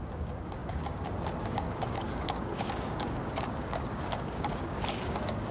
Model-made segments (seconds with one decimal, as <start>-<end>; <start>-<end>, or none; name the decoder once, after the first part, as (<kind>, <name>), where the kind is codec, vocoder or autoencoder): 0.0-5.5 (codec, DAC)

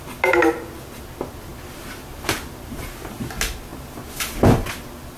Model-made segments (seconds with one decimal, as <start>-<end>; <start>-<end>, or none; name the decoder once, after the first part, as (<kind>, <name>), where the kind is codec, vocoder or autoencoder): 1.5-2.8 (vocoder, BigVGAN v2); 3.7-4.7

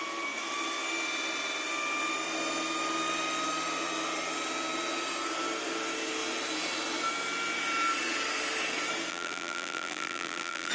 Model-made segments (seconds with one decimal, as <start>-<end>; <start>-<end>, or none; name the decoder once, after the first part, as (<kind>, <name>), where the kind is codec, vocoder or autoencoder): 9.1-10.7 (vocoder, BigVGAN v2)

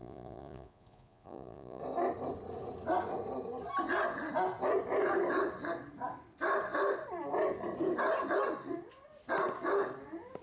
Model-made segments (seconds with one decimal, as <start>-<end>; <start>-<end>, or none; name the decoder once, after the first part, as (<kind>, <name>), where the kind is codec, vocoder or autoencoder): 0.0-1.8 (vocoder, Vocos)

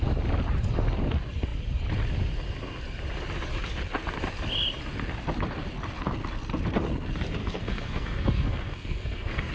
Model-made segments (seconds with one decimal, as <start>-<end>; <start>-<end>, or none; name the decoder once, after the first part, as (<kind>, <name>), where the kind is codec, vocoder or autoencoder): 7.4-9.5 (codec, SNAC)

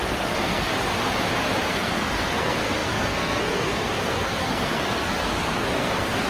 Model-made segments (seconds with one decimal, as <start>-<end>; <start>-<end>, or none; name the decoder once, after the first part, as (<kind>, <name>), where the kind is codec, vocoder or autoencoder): 0.0-0.7 (codec, SNAC); 1.7-6.3

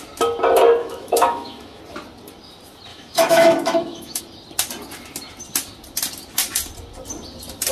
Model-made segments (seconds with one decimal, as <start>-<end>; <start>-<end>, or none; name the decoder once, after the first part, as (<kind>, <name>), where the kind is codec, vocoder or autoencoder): 0.8-1.8 (autoencoder, DAC-VAE); 2.9-4.2